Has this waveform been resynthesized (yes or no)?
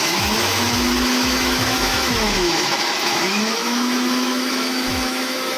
yes